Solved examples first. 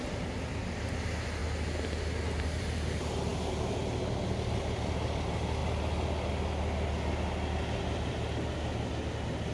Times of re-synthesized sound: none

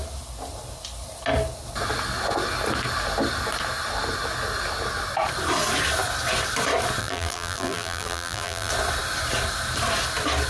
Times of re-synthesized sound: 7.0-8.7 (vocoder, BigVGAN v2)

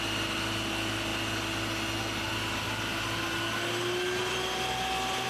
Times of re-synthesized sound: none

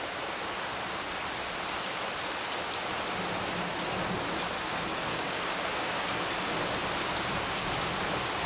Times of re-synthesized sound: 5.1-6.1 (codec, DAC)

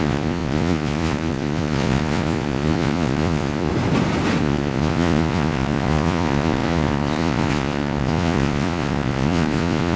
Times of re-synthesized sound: 0.0-3.7 (vocoder, Vocos); 4.4-10.0

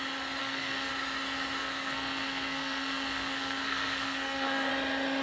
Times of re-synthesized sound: 0.4-0.9 (codec, SNAC); 1.6-4.7